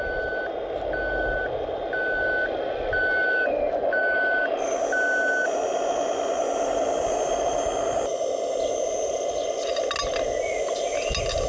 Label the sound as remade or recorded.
recorded